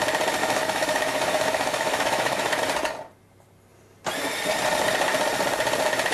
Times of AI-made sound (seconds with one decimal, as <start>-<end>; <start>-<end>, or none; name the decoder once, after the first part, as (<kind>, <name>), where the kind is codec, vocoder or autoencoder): 0.4-2.6 (autoencoder, DAC-VAE)